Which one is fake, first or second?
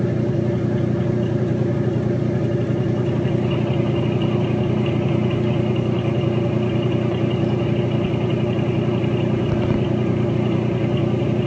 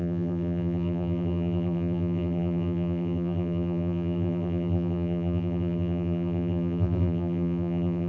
second